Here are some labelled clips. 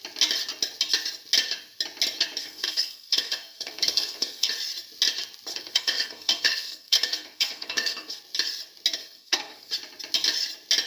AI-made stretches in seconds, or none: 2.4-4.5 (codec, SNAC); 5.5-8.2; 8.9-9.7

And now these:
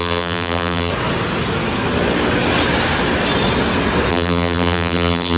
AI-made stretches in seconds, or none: 0.0-0.9 (vocoder, BigVGAN v2); 4.1-5.4